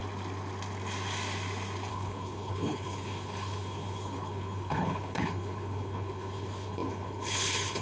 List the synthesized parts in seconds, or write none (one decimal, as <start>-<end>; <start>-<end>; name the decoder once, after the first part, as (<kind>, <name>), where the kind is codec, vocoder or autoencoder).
1.9-7.8 (codec, HILCodec)